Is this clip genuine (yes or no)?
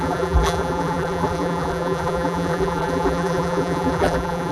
no